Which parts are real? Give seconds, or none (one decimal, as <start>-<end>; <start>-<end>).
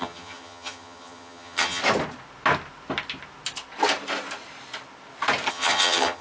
1.8-5.5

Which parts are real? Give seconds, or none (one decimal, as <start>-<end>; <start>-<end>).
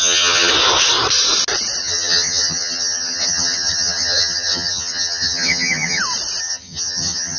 0.5-1.8; 6.0-6.4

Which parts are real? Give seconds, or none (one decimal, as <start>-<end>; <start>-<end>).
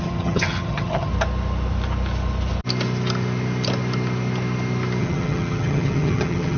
1.1-5.0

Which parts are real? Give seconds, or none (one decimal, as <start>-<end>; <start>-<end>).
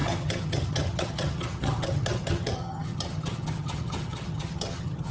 none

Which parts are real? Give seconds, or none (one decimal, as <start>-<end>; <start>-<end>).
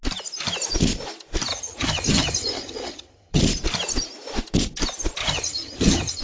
0.0-1.5; 3.4-5.2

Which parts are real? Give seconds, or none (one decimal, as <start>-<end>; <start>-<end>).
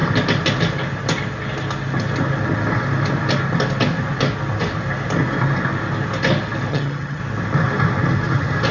0.0-6.7; 7.2-8.7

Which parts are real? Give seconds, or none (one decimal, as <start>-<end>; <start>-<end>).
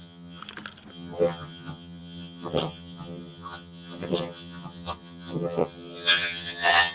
0.4-0.9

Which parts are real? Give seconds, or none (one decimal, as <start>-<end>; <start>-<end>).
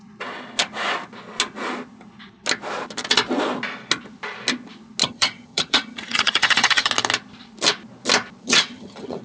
0.0-5.0; 6.9-8.4